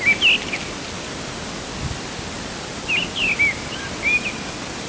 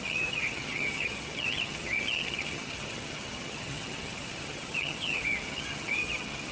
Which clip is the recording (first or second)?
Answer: first